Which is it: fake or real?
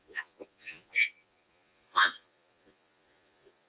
fake